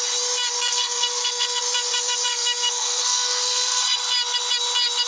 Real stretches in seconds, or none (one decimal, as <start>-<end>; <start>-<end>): 0.0-0.7; 1.6-2.3; 4.0-5.1